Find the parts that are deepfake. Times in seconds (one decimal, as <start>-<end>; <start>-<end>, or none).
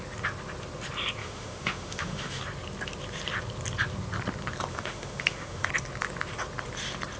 1.2-2.4; 4.7-5.7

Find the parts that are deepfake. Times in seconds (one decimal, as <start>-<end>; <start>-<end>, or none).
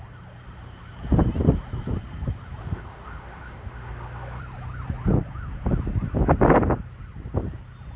2.6-4.4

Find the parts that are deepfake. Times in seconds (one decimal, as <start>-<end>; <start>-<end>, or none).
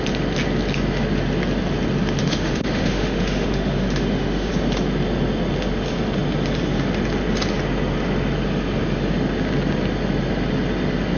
2.2-4.5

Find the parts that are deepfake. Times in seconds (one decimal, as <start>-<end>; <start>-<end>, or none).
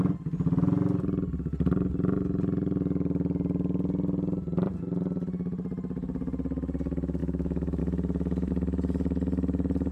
7.2-7.8